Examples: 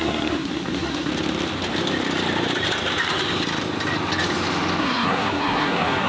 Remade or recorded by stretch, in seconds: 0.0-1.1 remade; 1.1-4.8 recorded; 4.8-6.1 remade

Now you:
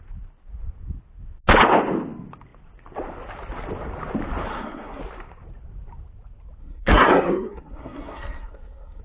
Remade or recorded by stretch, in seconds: 0.0-4.5 recorded; 4.5-5.0 remade; 5.0-6.6 recorded; 6.6-9.0 remade

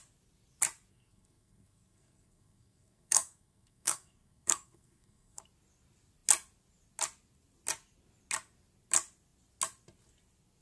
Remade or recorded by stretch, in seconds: 0.0-0.9 recorded; 0.9-5.4 remade; 5.4-10.6 recorded